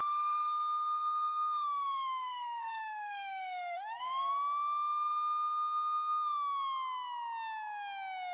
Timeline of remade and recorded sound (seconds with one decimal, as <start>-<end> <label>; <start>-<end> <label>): 0.0-4.3 remade; 4.3-8.3 recorded